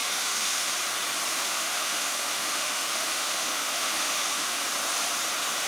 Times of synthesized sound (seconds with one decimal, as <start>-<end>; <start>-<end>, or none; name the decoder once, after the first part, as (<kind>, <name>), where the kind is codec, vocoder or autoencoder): 0.0-0.7 (autoencoder, DAC-VAE); 1.3-4.6

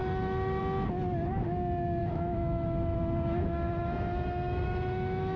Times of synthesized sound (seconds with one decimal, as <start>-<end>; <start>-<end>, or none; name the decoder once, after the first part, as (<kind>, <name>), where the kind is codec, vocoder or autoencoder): 0.0-0.6 (autoencoder, DAC-VAE); 2.0-5.4

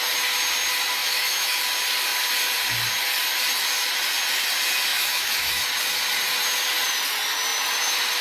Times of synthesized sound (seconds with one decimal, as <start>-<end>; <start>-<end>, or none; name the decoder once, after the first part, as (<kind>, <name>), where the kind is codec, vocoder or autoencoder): 1.0-1.6 (autoencoder, DAC-VAE); 4.9-5.6

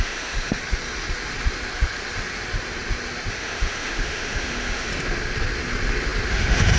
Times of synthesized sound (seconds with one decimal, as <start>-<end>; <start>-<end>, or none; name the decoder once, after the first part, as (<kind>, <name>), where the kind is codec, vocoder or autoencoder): 0.0-0.6 (autoencoder, DAC-VAE); 3.3-4.9; 6.3-6.8

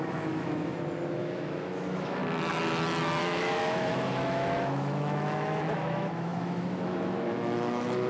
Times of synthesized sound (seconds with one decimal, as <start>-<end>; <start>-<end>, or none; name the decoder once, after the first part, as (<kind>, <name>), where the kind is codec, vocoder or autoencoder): 0.0-0.7 (autoencoder, DAC-VAE); 1.2-2.2; 3.2-8.1

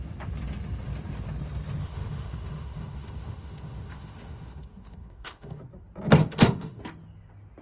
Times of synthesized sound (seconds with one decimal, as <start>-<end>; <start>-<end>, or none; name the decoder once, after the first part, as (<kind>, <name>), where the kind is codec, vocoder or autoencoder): 1.8-5.6 (autoencoder, DAC-VAE); 6.2-6.8

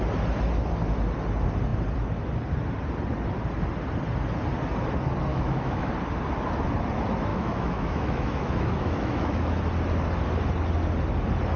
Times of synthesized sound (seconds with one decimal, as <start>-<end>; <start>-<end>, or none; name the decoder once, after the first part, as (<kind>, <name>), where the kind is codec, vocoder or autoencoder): 5.3-5.9 (autoencoder, DAC-VAE); 7.3-9.6

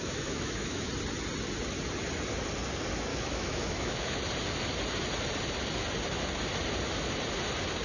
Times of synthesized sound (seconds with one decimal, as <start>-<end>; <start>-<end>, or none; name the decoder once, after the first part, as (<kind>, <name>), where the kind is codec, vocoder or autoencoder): 0.0-0.9 (autoencoder, DAC-VAE); 3.1-4.2